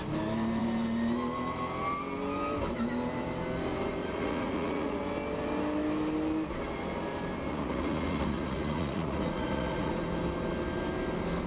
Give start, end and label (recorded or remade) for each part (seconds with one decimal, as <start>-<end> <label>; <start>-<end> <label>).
0.0-4.0 recorded; 4.0-5.0 remade; 5.0-7.5 recorded; 7.5-9.9 remade; 9.9-11.5 recorded